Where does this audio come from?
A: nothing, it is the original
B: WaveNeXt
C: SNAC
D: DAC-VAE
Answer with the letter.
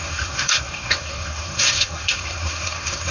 C